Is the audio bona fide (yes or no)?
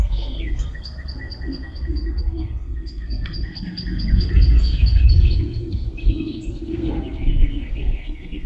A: no